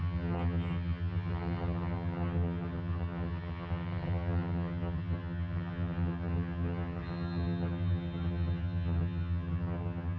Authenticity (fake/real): fake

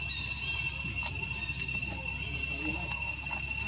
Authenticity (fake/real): real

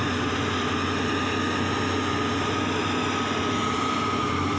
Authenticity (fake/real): real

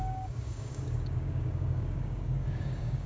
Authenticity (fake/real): fake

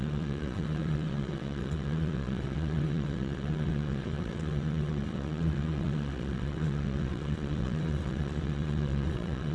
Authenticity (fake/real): fake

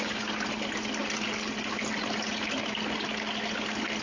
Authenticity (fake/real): real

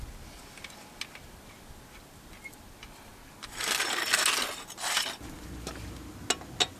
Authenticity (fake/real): real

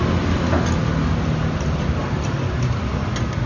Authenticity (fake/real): real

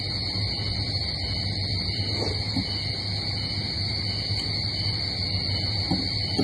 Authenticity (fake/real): real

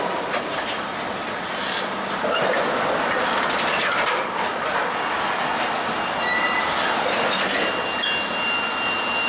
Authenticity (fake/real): real